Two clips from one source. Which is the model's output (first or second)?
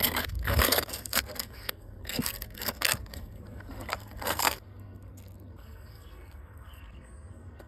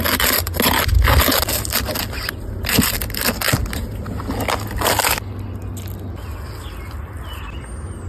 first